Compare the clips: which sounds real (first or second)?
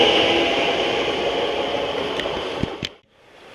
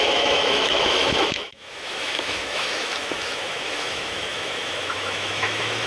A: first